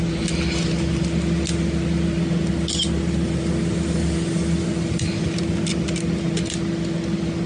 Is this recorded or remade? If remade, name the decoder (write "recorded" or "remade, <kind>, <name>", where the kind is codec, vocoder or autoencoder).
recorded